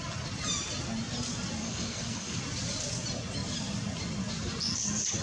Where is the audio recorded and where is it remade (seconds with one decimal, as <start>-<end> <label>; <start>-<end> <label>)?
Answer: 0.0-1.6 recorded; 1.6-2.4 remade; 2.4-5.2 recorded